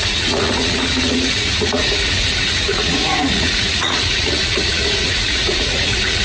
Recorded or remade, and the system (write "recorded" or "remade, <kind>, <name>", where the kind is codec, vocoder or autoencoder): remade, vocoder, Vocos